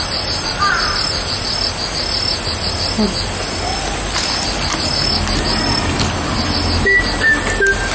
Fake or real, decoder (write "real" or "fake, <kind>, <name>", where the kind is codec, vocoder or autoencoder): real